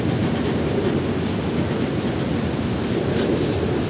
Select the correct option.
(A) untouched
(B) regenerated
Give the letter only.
A